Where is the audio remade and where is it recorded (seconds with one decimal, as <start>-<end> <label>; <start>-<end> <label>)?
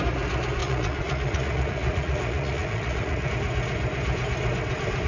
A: 0.0-0.6 recorded; 0.6-3.3 remade; 3.3-5.1 recorded